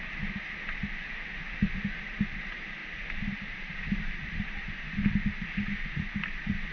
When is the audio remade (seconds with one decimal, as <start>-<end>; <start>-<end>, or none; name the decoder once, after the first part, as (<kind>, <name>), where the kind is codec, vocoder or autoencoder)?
2.8-4.7 (vocoder, BigVGAN v2)